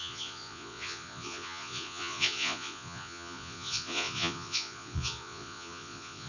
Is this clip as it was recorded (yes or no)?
no